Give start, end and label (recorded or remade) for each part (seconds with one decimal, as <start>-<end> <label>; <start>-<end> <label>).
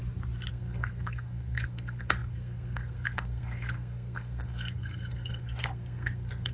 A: 0.0-0.5 recorded; 0.5-6.5 remade